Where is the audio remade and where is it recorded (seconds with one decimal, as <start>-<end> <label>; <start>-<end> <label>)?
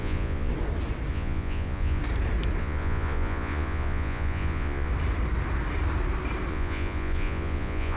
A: 0.0-0.5 remade; 0.5-1.1 recorded; 1.1-2.0 remade; 2.0-2.6 recorded; 2.6-4.9 remade; 4.9-6.5 recorded; 6.5-8.0 remade